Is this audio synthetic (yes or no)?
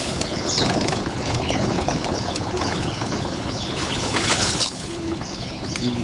yes